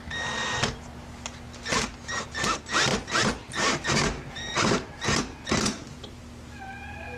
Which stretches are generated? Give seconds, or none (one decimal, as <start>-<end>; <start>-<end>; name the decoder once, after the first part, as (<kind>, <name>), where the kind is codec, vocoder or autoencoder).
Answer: 2.9-6.2 (vocoder, BigVGAN v2)